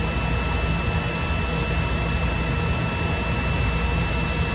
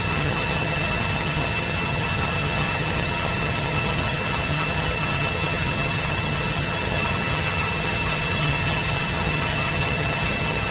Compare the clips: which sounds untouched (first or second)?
first